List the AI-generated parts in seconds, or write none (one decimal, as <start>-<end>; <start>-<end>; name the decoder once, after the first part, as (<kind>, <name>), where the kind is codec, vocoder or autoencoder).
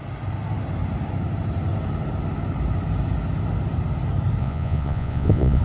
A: 4.4-5.6 (vocoder, Vocos)